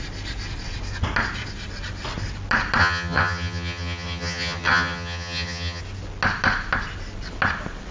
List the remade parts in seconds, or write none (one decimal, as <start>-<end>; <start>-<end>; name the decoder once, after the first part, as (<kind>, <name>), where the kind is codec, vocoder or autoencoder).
2.8-5.8 (vocoder, HiFi-GAN)